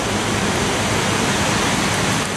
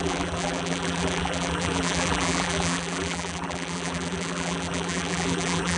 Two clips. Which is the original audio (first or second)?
first